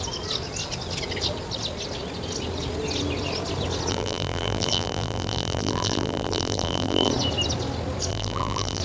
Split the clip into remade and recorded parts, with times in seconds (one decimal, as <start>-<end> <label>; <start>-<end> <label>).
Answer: 0.0-3.9 recorded; 3.9-7.1 remade; 7.1-8.1 recorded; 8.1-8.8 remade